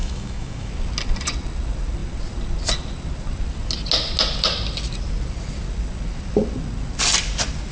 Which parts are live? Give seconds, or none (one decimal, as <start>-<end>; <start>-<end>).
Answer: 0.7-7.7

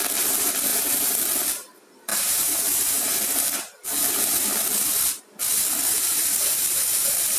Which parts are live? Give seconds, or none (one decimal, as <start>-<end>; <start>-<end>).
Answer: 0.0-0.7; 1.3-2.1; 3.2-6.2

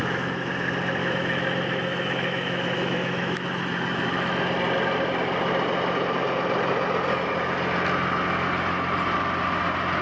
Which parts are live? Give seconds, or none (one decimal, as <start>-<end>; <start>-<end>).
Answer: 0.5-1.0; 4.4-10.0

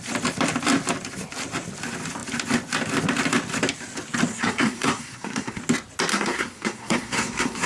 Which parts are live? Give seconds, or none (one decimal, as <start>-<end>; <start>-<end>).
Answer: 0.0-4.3; 5.6-6.1

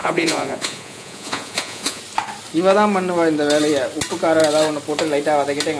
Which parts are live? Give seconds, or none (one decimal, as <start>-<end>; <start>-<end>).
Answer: 2.0-5.8

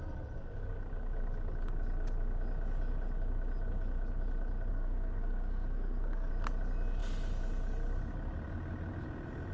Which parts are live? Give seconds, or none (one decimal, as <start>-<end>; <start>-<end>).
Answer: 0.0-4.7; 6.3-9.5

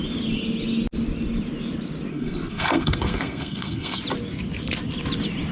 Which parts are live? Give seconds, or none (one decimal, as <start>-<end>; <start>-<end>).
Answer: 0.0-2.1; 4.0-5.5